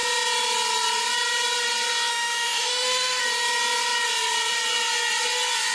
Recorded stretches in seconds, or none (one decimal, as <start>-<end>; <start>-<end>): 0.0-2.1; 3.2-5.7